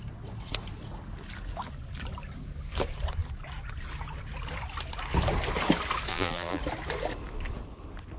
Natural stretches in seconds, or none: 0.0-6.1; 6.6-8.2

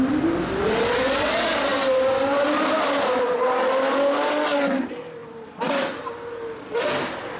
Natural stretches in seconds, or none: 0.0-5.2; 6.0-7.4

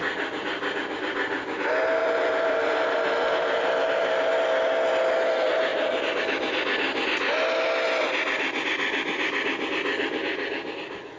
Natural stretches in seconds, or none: 0.0-2.0; 4.3-5.7; 6.2-11.2

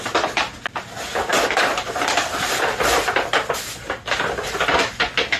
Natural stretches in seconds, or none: 0.0-1.3; 3.4-5.4